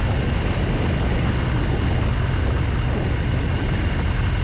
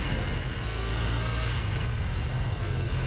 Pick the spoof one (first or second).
second